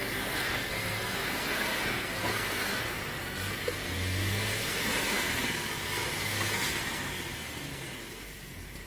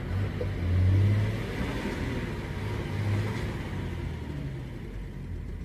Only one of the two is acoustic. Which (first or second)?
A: second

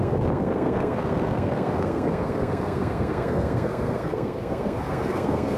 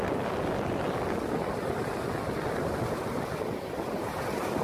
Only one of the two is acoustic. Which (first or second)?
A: second